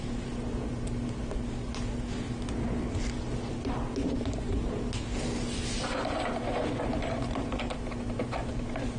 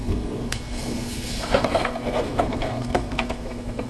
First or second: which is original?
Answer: first